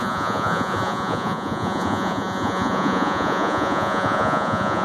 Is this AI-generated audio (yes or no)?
yes